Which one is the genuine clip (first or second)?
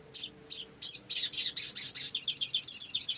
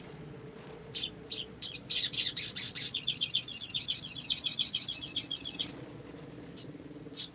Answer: first